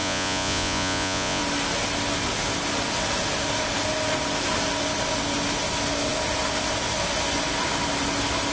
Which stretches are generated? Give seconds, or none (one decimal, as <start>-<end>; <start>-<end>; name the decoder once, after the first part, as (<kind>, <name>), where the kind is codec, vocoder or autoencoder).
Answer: 0.0-1.4 (vocoder, Vocos)